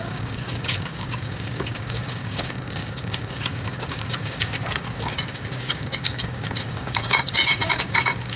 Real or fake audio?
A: fake